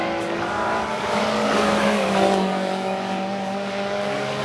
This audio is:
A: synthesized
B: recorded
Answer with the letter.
A